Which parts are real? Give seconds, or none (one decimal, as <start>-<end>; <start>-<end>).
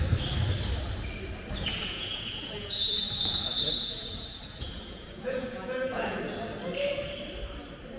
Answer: 0.0-1.8; 6.2-8.0